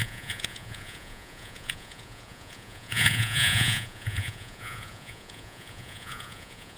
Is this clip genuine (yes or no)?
no